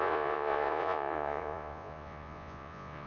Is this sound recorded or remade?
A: remade